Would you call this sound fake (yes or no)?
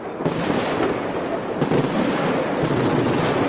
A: yes